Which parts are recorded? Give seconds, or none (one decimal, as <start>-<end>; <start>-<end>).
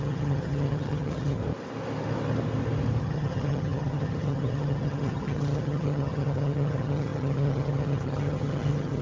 1.4-3.0